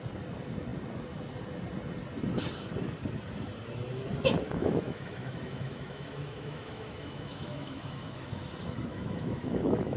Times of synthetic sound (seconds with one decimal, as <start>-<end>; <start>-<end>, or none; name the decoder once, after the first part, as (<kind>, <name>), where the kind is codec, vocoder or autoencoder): 4.6-8.5 (autoencoder, DAC-VAE); 8.9-10.0